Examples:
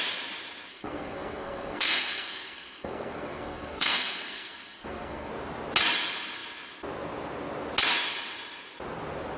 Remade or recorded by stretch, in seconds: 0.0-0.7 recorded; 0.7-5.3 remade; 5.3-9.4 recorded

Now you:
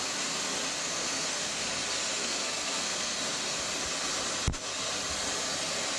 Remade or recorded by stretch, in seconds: 0.0-0.8 recorded; 0.8-1.6 remade; 1.6-2.2 recorded; 2.2-3.2 remade; 3.2-6.0 recorded

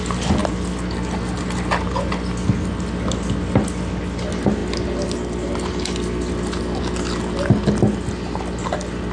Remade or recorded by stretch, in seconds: 0.0-9.1 recorded

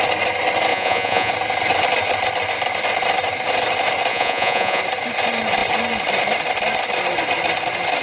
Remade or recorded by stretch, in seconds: 0.0-0.7 recorded; 0.7-1.3 remade; 1.3-4.1 recorded; 4.1-4.8 remade; 4.8-8.0 recorded

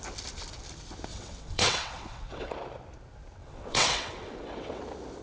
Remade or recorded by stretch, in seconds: 0.0-1.1 recorded; 1.1-2.5 remade; 2.5-3.4 recorded; 3.4-4.8 remade; 4.8-5.2 recorded

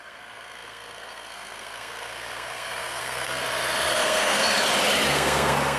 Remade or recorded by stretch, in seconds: 0.0-3.4 remade; 3.4-3.9 recorded; 3.9-4.4 remade; 4.4-5.1 recorded; 5.1-5.8 remade

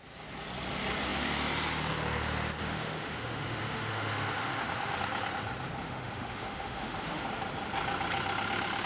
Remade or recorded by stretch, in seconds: 0.0-2.6 recorded; 2.6-5.0 remade; 5.0-5.8 recorded; 5.8-7.2 remade; 7.2-8.9 recorded